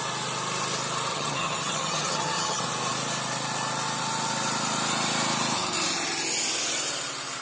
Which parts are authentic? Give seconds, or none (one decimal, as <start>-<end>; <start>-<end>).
0.0-1.1; 2.6-7.4